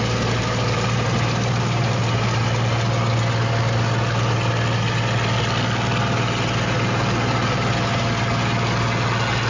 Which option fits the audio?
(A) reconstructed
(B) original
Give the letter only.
B